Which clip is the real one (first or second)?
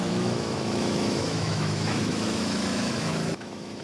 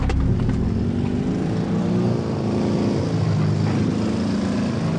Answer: second